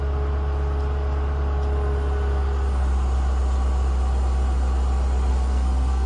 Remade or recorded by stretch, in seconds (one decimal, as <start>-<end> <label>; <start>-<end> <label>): 0.0-5.3 recorded; 5.3-6.1 remade